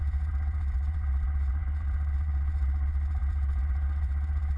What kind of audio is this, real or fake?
fake